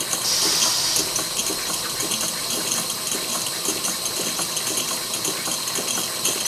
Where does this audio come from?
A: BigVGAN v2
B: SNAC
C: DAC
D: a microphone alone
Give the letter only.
D